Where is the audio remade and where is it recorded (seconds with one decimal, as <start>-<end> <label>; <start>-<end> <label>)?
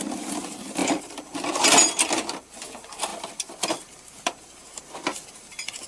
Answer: 0.0-0.8 recorded; 0.8-1.6 remade; 1.6-3.1 recorded; 3.1-4.6 remade; 4.6-5.9 recorded